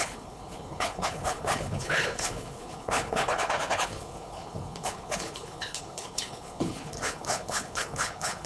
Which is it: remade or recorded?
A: remade